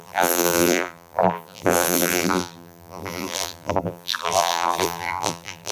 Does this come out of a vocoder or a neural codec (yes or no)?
yes